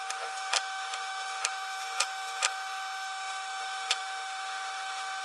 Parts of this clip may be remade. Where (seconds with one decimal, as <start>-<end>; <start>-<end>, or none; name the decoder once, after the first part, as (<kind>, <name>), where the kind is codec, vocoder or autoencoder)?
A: 0.0-5.2 (autoencoder, DAC-VAE)